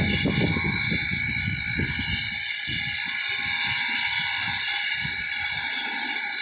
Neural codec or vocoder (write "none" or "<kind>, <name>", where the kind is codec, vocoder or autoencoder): none